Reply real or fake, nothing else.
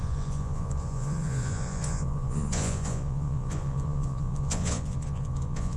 fake